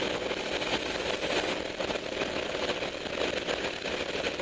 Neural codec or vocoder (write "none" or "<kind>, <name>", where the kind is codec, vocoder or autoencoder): none